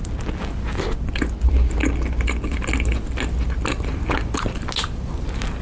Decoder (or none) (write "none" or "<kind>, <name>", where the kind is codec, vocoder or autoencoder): none